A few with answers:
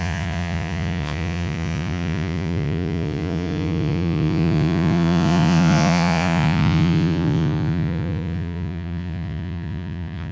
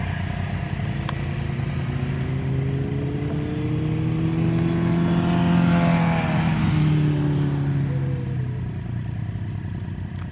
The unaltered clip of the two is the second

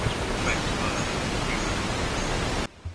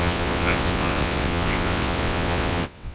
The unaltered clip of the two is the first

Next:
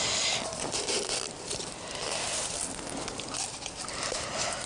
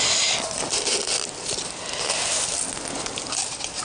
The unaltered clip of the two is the second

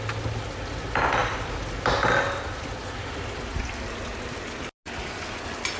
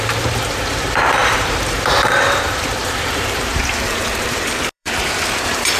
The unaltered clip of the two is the first